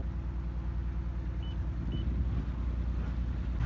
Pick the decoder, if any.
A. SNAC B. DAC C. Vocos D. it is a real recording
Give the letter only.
D